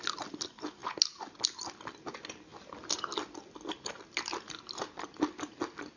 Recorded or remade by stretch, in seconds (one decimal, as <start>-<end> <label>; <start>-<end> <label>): 0.0-6.0 recorded